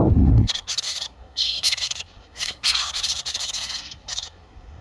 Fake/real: fake